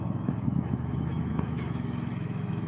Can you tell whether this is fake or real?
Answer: fake